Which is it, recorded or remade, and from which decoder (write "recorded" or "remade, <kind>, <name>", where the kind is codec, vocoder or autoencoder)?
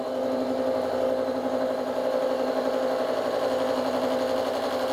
recorded